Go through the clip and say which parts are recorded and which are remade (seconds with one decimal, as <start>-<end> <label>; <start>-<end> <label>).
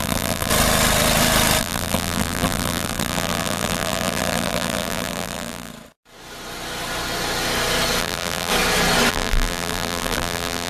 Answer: 0.0-0.5 remade; 0.5-1.6 recorded; 1.6-5.7 remade; 5.7-8.0 recorded; 8.0-8.5 remade; 8.5-9.1 recorded; 9.1-10.7 remade